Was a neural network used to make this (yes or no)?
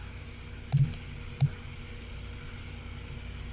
no